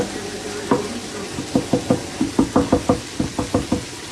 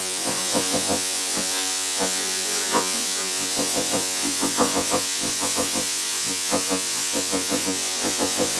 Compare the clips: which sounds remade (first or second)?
second